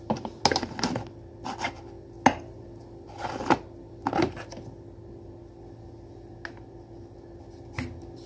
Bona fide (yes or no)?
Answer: yes